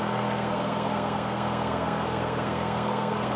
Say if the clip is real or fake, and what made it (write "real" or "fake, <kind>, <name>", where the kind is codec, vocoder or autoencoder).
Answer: fake, codec, SNAC